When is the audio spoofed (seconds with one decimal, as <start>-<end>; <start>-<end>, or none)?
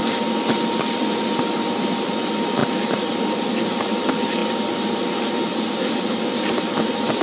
2.6-3.1